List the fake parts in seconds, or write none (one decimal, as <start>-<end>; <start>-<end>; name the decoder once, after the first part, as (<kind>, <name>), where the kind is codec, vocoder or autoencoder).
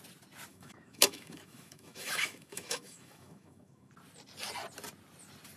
0.5-3.9 (autoencoder, DAC-VAE)